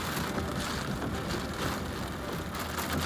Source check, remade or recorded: recorded